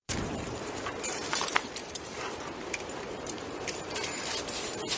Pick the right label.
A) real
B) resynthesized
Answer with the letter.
B